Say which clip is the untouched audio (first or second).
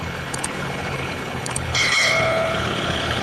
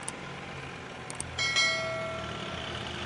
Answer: second